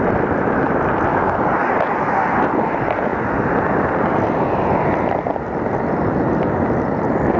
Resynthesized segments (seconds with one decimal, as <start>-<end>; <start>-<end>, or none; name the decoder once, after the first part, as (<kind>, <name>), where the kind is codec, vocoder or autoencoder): 1.1-1.7 (codec, DAC)